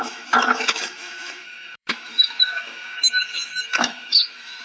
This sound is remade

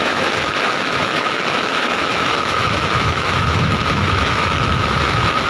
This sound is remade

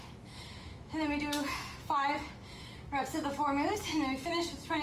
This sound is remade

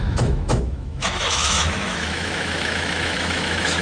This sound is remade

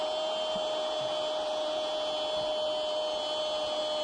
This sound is recorded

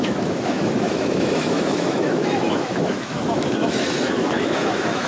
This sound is remade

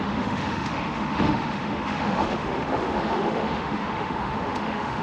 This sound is remade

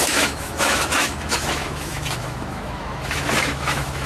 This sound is remade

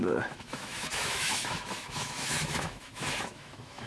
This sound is remade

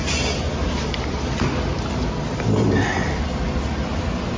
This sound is recorded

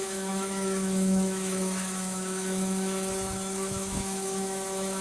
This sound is remade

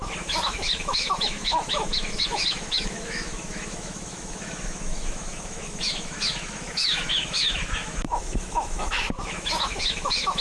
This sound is remade